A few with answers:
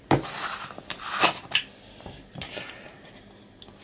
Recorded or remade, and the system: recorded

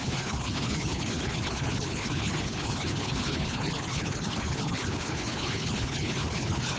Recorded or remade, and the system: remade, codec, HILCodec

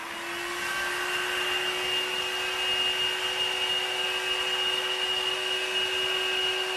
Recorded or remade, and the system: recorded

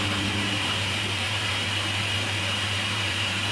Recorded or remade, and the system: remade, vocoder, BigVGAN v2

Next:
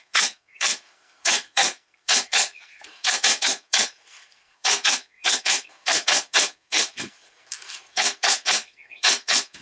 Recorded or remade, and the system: remade, codec, SNAC